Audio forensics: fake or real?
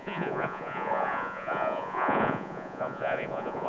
fake